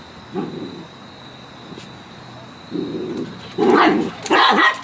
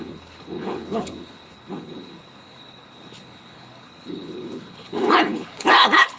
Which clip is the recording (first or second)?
first